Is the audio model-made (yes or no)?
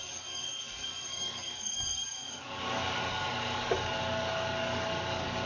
yes